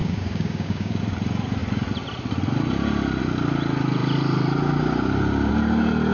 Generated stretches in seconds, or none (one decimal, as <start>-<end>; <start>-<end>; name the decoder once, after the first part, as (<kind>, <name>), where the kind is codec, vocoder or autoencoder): 0.0-1.0 (codec, DAC)